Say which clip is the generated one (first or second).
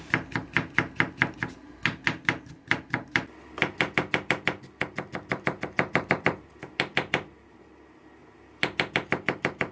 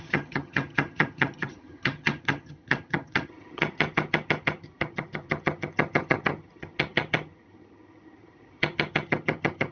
second